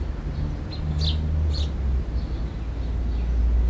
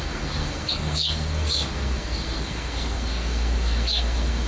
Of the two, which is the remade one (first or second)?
second